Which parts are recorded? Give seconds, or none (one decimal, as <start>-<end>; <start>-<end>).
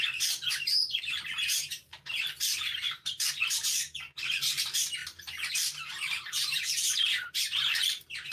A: 5.0-5.5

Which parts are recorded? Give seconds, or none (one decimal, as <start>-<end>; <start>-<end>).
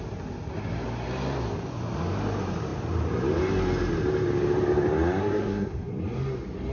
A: 0.0-5.2; 5.9-6.7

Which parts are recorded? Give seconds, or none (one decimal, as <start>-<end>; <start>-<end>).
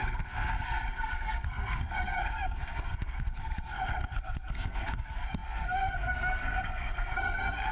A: none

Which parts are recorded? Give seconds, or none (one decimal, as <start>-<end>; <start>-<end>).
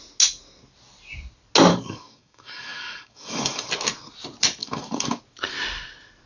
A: 0.0-1.7; 3.7-4.6; 5.2-6.3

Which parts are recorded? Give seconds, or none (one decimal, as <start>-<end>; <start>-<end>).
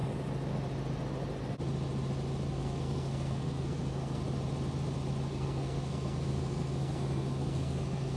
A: 0.0-2.5; 4.2-5.3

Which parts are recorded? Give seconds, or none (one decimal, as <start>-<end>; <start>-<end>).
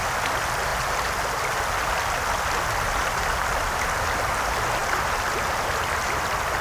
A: 0.0-6.6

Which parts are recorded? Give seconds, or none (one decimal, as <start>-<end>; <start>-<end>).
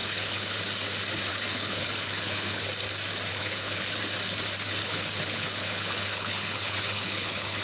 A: 0.6-1.3; 2.6-3.3; 4.0-4.8